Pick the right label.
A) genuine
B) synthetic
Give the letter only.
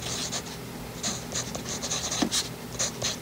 A